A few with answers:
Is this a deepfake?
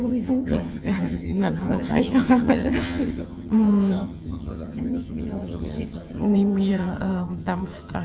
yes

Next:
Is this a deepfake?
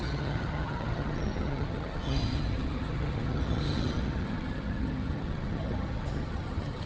yes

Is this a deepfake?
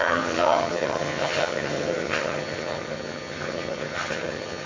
yes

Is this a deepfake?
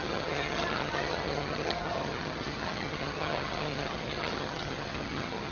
yes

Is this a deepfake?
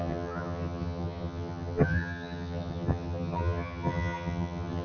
yes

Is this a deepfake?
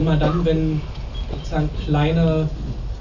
no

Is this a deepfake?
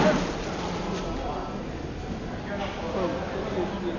no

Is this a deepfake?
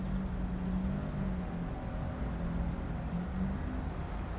no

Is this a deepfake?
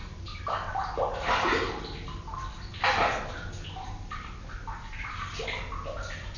no